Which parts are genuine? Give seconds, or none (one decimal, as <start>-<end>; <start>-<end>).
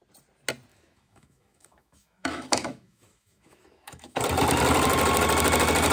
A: 0.0-0.7; 4.2-5.9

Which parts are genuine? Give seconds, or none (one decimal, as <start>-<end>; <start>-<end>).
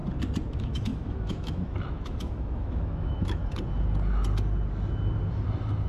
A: 0.0-0.5; 3.4-5.9